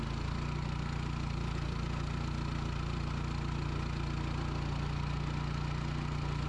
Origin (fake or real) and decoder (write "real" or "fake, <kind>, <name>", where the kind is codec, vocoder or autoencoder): real